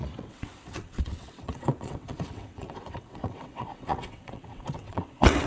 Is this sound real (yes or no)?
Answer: no